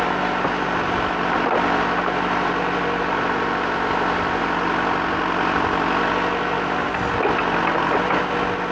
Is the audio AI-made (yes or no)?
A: no